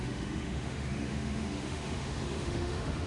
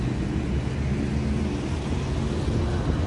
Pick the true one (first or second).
second